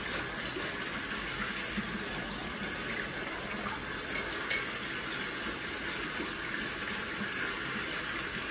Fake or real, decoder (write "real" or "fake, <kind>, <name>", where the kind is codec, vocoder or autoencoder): real